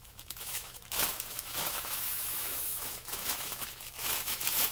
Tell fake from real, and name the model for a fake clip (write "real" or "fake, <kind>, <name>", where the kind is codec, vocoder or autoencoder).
fake, autoencoder, DAC-VAE